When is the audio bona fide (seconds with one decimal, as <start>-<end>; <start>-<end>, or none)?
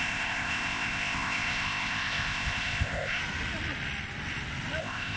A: 3.2-4.8